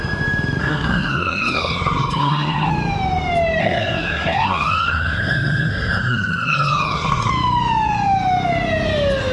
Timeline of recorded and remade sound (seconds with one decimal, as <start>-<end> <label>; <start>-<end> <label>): 0.0-0.6 recorded; 0.6-2.7 remade; 2.7-3.6 recorded; 3.6-7.3 remade; 7.3-9.3 recorded